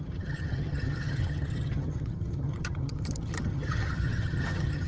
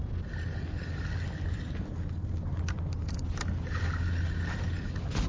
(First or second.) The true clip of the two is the second